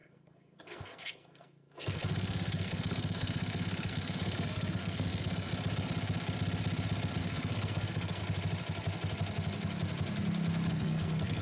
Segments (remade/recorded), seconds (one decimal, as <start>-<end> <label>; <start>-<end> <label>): 0.0-5.5 remade; 5.5-7.2 recorded; 7.2-8.2 remade; 8.2-10.7 recorded; 10.7-11.4 remade